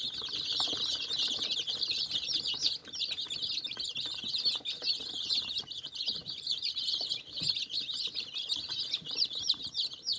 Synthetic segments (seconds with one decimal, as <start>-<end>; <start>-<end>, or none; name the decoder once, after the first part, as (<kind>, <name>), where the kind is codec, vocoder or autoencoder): 0.0-10.2 (vocoder, BigVGAN v2)